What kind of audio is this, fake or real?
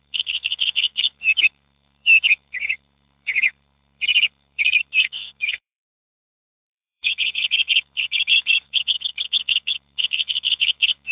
fake